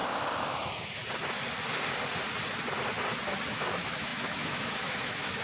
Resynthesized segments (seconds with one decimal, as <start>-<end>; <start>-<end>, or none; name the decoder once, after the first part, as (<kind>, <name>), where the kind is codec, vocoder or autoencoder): 0.6-1.0 (autoencoder, DAC-VAE); 3.5-5.4